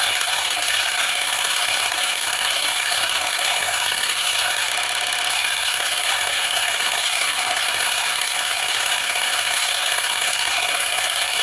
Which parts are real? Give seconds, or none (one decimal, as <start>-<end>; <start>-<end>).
4.7-5.3